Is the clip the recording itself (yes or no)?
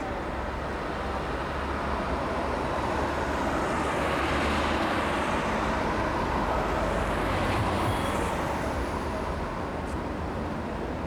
yes